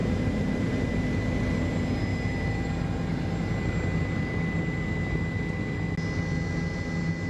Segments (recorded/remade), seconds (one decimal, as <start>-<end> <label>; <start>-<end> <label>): 0.0-0.9 remade; 0.9-2.1 recorded; 2.1-2.7 remade; 2.7-7.3 recorded